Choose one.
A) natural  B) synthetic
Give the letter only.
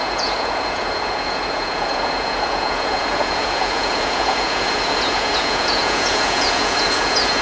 B